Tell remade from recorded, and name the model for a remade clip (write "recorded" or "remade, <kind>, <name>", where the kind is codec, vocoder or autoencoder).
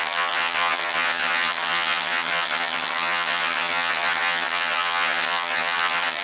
remade, vocoder, HiFi-GAN